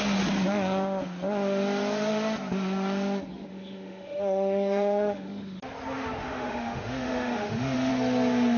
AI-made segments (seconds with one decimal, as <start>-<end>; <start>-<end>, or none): 3.5-5.6; 6.2-7.9